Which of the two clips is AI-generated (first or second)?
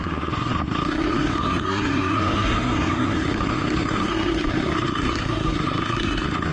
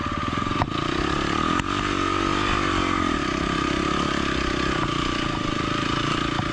first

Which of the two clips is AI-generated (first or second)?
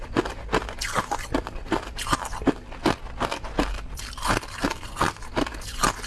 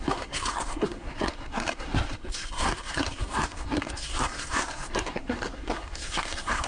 second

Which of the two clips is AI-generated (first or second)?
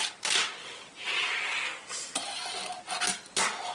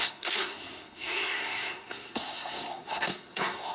second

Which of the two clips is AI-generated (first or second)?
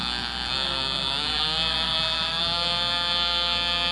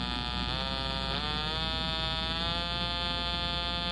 first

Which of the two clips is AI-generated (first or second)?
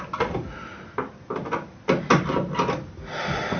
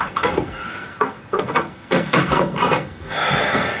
second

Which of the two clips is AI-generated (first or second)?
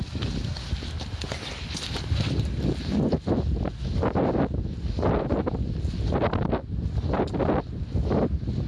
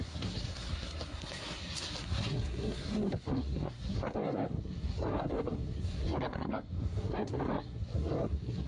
second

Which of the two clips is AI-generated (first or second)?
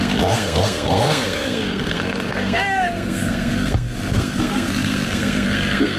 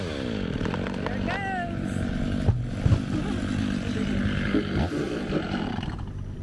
first